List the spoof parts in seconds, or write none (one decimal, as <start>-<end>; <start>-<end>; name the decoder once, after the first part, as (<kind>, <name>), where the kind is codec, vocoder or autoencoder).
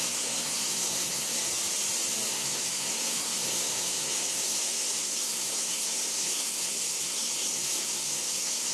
0.0-1.5 (codec, SNAC); 2.3-8.7